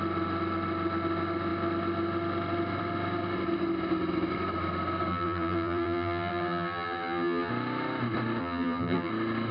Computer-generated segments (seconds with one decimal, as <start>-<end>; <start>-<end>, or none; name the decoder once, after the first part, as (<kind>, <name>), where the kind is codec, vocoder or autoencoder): 5.1-7.5 (vocoder, BigVGAN v2); 8.4-9.1